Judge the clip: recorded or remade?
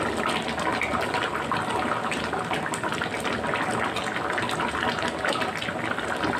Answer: recorded